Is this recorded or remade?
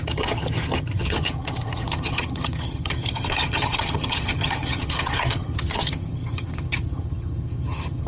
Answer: remade